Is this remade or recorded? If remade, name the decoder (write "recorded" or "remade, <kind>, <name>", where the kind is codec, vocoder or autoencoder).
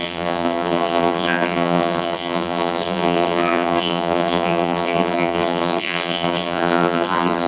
remade, vocoder, BigVGAN v2